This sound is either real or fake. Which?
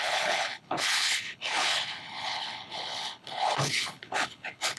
fake